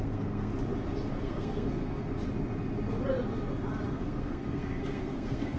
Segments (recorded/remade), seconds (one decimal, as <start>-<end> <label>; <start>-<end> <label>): 0.0-0.5 remade; 0.5-1.1 recorded; 1.1-2.1 remade; 2.1-3.9 recorded; 3.9-5.6 remade